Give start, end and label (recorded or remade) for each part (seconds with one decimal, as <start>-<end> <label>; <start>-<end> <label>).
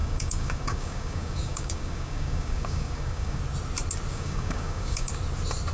0.0-3.4 remade; 3.4-4.1 recorded; 4.1-5.1 remade; 5.1-5.7 recorded